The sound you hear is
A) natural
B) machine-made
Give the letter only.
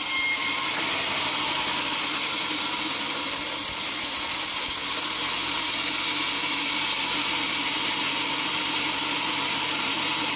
A